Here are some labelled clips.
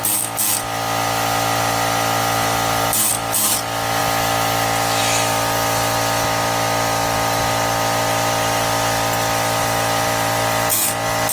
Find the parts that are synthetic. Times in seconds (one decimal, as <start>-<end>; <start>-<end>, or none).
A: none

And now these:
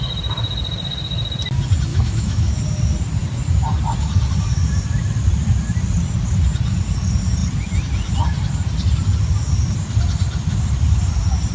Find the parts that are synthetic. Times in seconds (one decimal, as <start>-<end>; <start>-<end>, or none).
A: 1.9-2.6

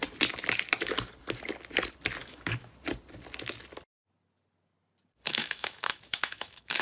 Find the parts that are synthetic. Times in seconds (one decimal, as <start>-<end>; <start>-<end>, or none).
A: 2.2-2.7; 5.3-6.8

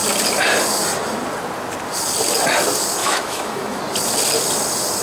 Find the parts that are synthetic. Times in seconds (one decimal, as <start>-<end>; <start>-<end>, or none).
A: 3.0-3.8

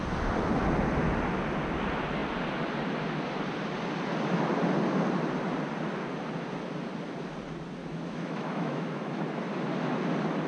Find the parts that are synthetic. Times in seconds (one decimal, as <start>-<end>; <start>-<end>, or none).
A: 7.8-9.3

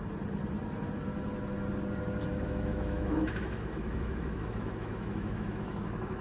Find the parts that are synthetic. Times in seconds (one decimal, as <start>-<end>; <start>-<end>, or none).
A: 2.3-6.2

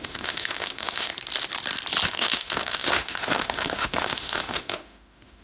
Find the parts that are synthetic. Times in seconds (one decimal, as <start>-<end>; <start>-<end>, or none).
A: 0.0-1.1; 2.1-5.4